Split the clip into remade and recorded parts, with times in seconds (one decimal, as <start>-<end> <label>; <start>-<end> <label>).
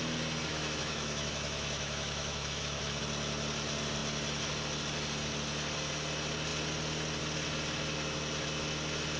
0.0-0.5 recorded; 0.5-3.0 remade; 3.0-9.2 recorded